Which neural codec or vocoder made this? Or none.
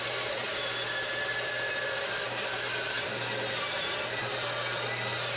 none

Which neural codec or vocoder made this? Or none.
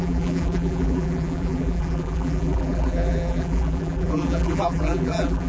vocoder, BigVGAN v2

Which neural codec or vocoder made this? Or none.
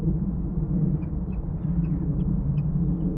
none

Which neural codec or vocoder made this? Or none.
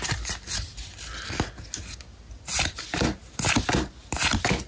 none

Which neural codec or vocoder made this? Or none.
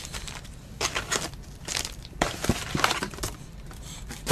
vocoder, BigVGAN v2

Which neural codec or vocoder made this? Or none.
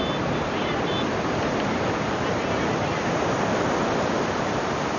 vocoder, BigVGAN v2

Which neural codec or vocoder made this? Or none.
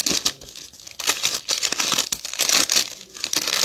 none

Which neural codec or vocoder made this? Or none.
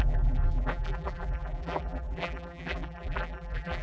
vocoder, BigVGAN v2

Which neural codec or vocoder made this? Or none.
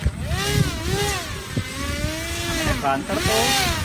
none